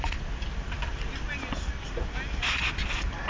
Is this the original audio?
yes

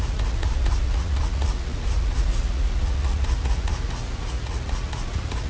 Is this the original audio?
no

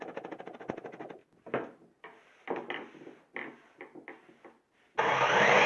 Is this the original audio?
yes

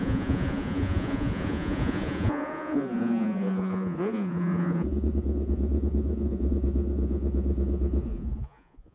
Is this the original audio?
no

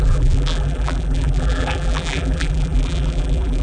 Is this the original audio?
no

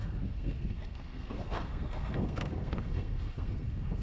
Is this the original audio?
no